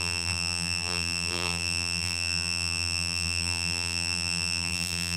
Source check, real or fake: fake